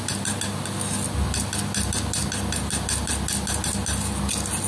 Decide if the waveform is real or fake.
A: real